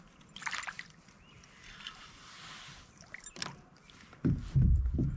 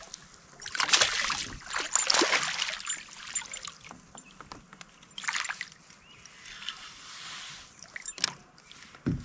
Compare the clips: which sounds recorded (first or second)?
second